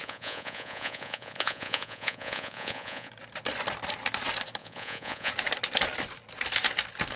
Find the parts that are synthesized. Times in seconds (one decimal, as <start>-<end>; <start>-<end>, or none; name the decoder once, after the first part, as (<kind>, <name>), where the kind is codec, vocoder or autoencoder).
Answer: 0.0-3.1 (vocoder, Vocos); 4.6-5.3